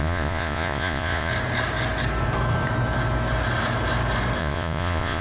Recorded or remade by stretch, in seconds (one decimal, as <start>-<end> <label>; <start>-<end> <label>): 0.0-1.3 remade; 1.3-4.4 recorded; 4.4-5.2 remade